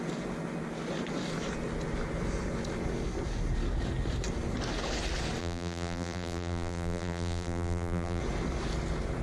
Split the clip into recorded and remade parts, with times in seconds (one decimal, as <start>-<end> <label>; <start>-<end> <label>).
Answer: 0.0-5.4 recorded; 5.4-8.2 remade; 8.2-9.2 recorded

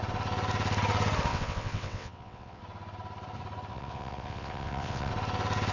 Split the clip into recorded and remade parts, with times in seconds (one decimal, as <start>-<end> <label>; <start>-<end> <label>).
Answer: 0.0-1.3 recorded; 1.3-2.6 remade; 2.6-3.7 recorded; 3.7-5.1 remade; 5.1-5.7 recorded